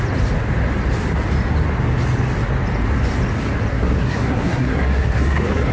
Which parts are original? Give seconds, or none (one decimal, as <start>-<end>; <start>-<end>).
0.0-3.7